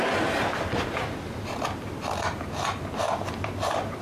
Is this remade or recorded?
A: remade